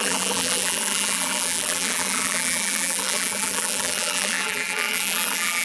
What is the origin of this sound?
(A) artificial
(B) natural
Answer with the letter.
A